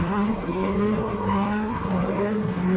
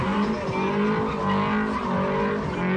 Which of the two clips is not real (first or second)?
first